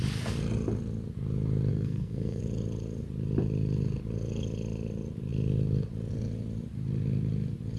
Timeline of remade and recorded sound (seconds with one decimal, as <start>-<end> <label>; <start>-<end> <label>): 0.0-1.7 recorded; 1.7-2.4 remade; 2.4-7.8 recorded